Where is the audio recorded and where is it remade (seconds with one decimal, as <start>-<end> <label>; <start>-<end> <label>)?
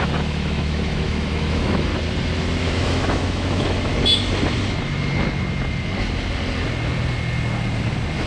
0.0-1.9 remade; 1.9-2.6 recorded; 2.6-3.9 remade; 3.9-8.3 recorded